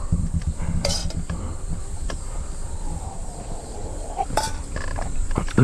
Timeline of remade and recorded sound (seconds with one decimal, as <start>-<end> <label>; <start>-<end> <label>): 0.0-1.0 remade; 1.0-1.8 recorded; 1.8-5.6 remade